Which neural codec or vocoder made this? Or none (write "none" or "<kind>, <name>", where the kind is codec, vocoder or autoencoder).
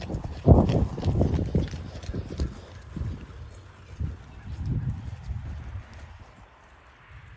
vocoder, BigVGAN v2